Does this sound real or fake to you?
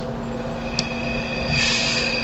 real